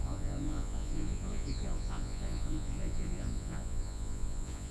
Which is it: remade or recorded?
remade